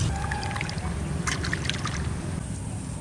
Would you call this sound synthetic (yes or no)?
no